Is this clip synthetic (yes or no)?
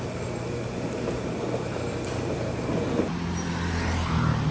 no